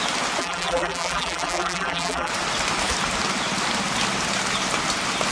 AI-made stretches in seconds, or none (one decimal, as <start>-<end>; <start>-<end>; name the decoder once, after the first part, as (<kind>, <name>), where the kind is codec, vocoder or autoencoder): 0.4-2.3 (vocoder, BigVGAN v2)